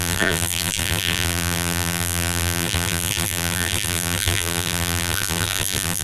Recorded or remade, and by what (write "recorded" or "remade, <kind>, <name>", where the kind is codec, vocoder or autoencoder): remade, vocoder, BigVGAN v2